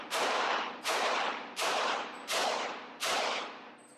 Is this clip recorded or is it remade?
remade